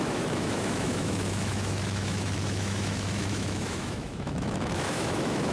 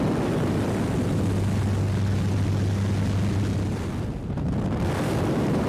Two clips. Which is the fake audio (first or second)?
first